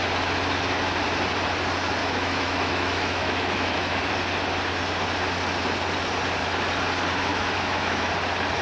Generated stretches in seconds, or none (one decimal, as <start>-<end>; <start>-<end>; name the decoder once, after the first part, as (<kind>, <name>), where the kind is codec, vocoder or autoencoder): 2.0-4.1 (autoencoder, DAC-VAE); 7.3-8.1